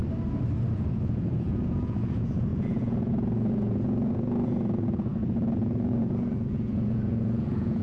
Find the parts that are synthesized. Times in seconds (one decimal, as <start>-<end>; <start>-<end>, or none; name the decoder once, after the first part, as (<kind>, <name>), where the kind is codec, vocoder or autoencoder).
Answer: 0.7-7.8 (vocoder, Vocos)